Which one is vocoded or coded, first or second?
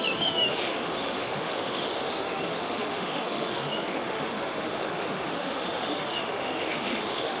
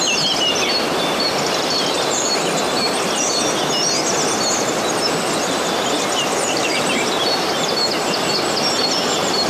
first